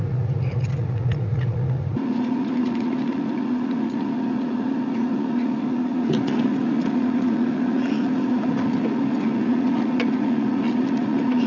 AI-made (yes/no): yes